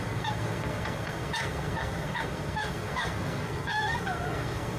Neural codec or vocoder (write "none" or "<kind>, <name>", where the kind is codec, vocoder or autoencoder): codec, SNAC